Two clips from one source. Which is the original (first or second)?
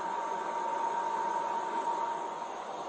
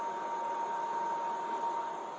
second